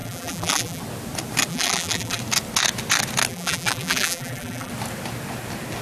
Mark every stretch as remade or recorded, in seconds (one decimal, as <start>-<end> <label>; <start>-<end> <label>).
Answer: 0.0-0.8 remade; 0.8-1.5 recorded; 1.5-2.2 remade; 2.2-3.3 recorded; 3.3-4.7 remade; 4.7-5.8 recorded